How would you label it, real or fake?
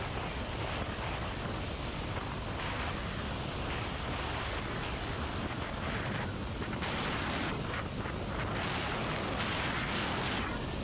real